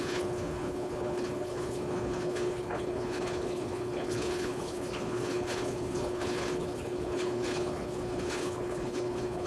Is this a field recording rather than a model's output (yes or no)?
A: no